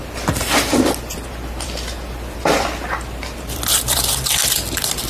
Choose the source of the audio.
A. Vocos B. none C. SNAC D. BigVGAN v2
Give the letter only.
D